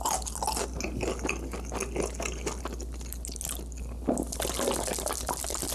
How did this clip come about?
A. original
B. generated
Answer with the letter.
A